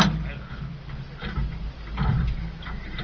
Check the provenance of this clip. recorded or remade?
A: recorded